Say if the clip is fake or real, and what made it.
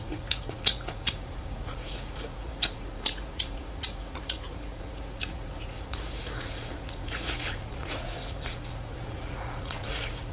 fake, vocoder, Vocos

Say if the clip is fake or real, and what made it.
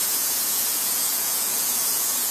fake, vocoder, Vocos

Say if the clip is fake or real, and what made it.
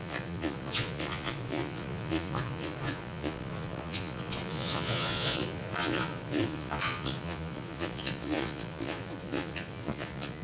fake, vocoder, Vocos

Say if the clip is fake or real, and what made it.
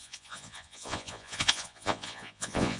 fake, vocoder, Vocos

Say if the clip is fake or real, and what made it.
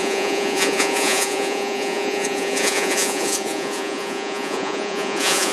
fake, vocoder, Vocos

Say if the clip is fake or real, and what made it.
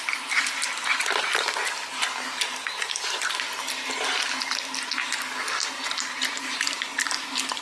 real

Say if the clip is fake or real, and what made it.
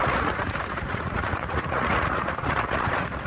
fake, vocoder, Vocos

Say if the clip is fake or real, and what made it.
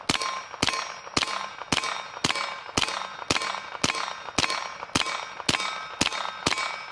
real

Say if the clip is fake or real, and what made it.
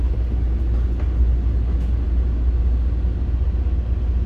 real